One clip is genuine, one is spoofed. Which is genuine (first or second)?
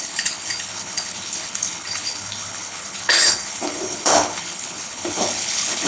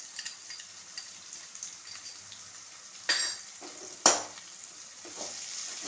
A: second